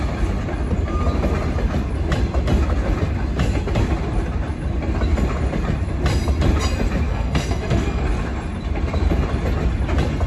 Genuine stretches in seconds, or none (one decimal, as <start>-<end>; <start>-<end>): 0.0-7.1; 8.0-10.3